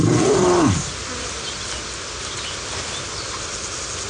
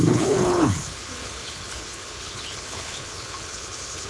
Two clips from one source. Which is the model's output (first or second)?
second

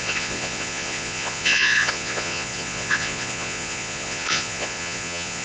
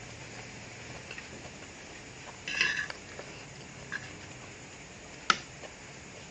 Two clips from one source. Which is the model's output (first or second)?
first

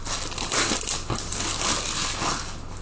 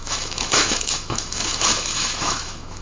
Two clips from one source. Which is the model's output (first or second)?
second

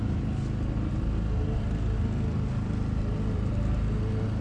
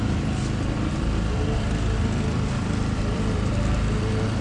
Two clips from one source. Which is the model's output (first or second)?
second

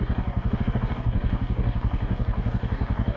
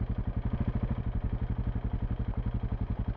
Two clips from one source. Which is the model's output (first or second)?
first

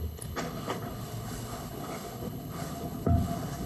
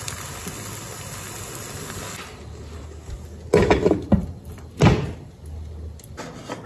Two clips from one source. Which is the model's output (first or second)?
first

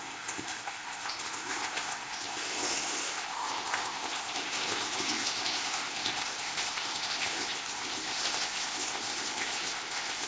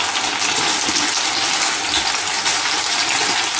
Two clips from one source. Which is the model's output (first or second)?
first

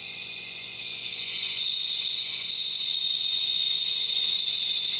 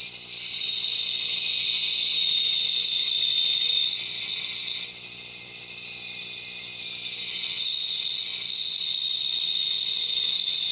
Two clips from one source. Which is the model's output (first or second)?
first